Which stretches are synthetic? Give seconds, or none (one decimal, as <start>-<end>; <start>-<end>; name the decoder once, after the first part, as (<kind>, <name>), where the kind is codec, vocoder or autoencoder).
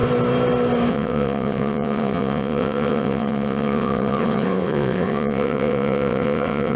0.9-6.8 (vocoder, WaveNeXt)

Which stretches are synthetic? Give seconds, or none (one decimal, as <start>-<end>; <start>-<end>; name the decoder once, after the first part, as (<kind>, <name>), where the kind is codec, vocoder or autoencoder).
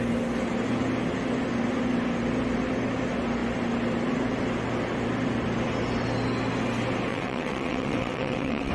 7.1-8.7 (vocoder, WaveNeXt)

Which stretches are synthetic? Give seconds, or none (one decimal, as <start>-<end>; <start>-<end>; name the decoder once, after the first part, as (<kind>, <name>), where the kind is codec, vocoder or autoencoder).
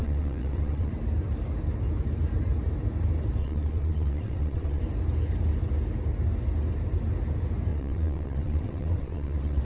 0.0-0.9 (vocoder, WaveNeXt); 3.4-4.8; 7.7-9.6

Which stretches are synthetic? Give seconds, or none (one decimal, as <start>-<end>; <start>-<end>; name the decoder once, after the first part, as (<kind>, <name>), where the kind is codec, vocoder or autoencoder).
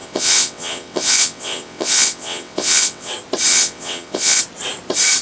0.0-3.1 (vocoder, WaveNeXt); 3.5-4.4